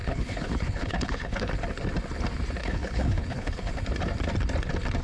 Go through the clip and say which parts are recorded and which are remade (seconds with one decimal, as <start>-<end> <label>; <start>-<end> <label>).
0.0-1.5 remade; 1.5-2.6 recorded; 2.6-3.7 remade; 3.7-5.0 recorded